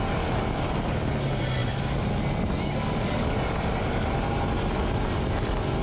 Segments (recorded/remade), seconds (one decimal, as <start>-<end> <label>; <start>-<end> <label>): 0.0-5.8 recorded